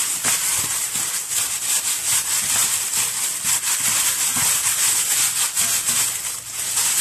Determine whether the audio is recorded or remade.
recorded